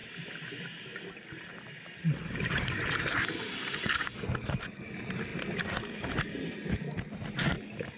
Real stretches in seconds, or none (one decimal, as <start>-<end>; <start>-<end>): 0.0-8.0